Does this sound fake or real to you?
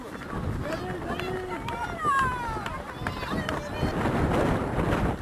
real